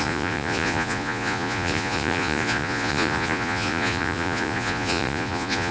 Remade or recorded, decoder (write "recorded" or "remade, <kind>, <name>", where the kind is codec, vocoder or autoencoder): remade, vocoder, Vocos